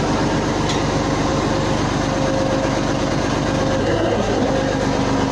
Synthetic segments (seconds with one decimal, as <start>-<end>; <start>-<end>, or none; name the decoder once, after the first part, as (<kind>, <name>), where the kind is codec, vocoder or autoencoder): 3.8-4.5 (codec, SNAC)